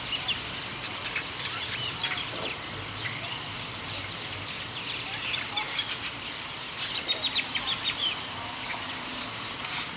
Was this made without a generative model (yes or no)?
no